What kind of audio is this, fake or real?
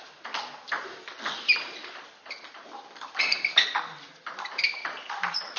real